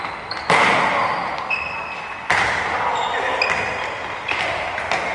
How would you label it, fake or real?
real